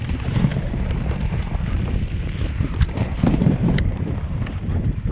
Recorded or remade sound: remade